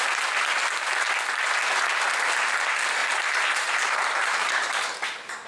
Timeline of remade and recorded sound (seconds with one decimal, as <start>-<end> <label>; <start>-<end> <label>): 0.0-3.0 recorded; 3.0-4.8 remade; 4.8-5.5 recorded